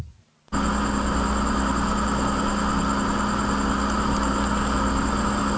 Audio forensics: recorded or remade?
recorded